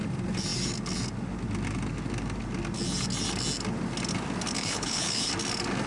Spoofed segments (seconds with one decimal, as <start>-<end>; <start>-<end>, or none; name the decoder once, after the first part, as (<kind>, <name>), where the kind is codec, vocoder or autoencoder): 4.6-5.3 (codec, HILCodec)